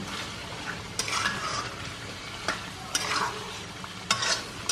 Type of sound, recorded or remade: recorded